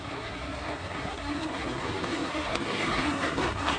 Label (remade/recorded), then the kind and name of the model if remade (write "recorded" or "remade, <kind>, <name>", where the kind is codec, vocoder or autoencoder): remade, codec, SNAC